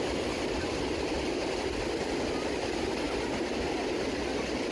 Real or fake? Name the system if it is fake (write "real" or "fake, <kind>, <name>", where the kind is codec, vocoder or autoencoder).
real